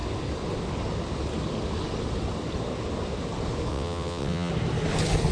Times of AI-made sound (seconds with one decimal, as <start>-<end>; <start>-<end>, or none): 3.7-4.5